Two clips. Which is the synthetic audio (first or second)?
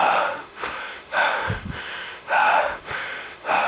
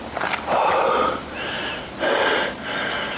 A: first